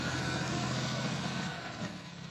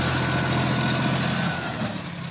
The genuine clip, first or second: second